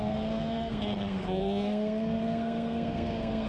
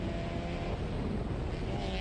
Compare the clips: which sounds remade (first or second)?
first